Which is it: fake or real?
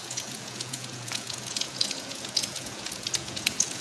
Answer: fake